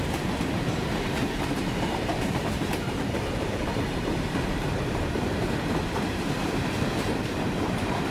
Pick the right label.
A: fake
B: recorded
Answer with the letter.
A